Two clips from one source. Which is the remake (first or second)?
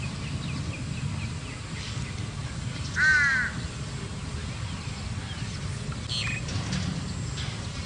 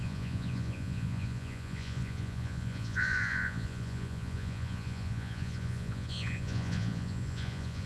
second